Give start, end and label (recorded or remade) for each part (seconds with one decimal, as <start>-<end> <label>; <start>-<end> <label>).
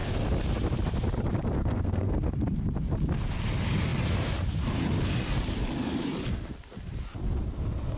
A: 0.0-1.6 recorded; 1.6-2.3 remade; 2.3-8.0 recorded